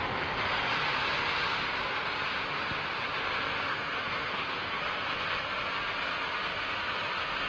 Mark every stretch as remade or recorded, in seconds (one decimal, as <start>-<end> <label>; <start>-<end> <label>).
0.0-3.7 recorded; 3.7-4.8 remade; 4.8-7.5 recorded